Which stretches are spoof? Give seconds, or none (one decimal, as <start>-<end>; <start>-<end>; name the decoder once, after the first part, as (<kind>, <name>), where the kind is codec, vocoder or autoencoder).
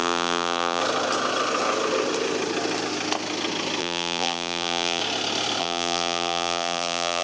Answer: 0.0-0.8 (vocoder, BigVGAN v2); 3.8-5.0; 5.6-7.2